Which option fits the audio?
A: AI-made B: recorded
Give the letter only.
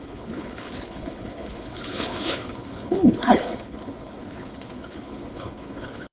A